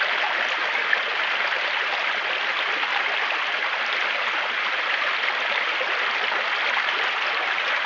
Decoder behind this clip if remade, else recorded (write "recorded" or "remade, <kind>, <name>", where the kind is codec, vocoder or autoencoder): recorded